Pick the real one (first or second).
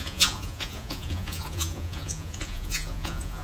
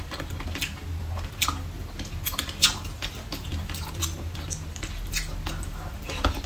second